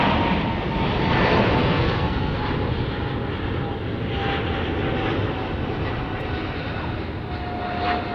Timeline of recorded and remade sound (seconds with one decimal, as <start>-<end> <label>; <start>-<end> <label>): 0.0-1.6 recorded; 1.6-2.4 remade; 2.4-8.1 recorded